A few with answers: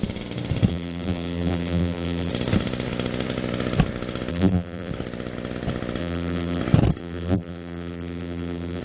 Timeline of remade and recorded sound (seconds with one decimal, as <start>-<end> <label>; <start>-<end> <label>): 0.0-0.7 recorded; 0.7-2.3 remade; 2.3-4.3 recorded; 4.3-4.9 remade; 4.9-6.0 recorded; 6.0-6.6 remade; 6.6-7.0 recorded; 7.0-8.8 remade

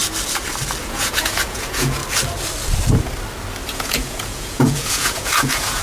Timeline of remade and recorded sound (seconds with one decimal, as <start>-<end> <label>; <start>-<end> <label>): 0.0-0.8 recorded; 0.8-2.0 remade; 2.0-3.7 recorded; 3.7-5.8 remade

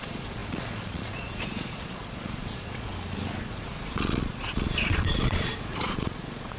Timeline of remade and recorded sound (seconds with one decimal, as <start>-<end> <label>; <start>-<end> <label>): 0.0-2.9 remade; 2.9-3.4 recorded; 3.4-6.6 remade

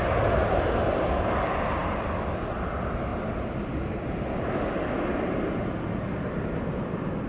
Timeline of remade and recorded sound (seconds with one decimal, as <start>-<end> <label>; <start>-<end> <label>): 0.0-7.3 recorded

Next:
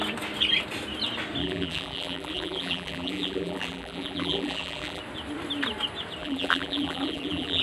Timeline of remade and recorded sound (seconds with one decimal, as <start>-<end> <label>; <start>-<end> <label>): 0.0-1.4 recorded; 1.4-5.0 remade; 5.0-6.2 recorded; 6.2-7.6 remade